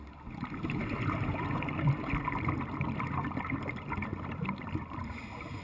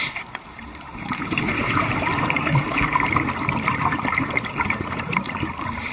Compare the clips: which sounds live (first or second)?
first